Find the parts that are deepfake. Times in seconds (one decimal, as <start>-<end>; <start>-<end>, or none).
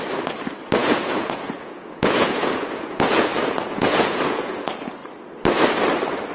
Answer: 0.8-4.6